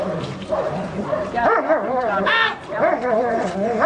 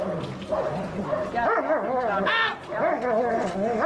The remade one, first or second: first